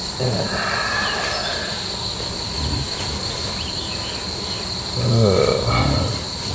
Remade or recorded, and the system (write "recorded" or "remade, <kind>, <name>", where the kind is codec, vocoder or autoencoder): recorded